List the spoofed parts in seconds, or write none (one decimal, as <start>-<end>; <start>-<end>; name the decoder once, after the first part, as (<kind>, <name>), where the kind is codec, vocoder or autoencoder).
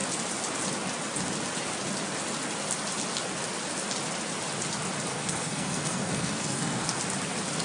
5.1-7.0 (codec, SNAC)